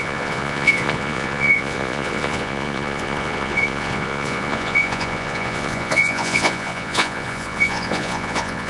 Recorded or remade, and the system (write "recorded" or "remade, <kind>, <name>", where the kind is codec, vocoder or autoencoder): remade, vocoder, Vocos